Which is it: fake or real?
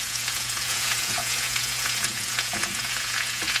fake